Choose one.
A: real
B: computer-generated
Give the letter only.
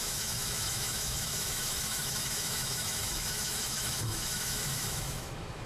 B